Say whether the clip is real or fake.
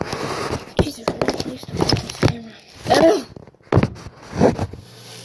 real